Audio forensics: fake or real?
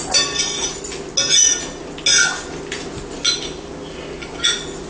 real